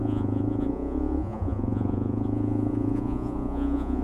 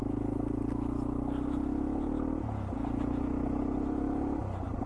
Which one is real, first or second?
second